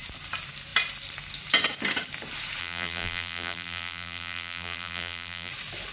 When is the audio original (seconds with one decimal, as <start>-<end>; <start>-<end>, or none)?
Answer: 0.0-2.6; 5.5-5.9